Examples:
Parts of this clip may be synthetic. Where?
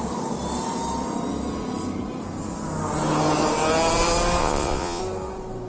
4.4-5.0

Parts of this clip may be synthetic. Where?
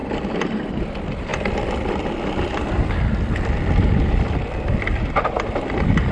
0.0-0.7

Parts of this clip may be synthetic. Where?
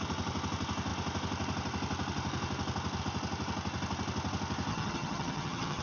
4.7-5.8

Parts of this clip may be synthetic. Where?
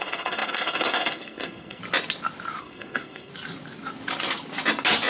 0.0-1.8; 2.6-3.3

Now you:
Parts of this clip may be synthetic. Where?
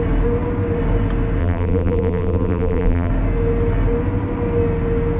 1.4-3.1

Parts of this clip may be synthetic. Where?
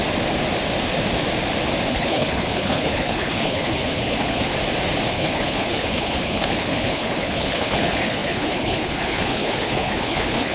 1.9-4.5; 5.1-10.5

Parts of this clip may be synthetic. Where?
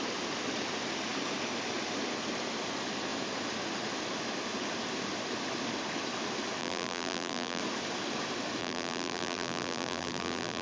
6.6-7.6; 8.6-10.6